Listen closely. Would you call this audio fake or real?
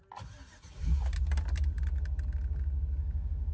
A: real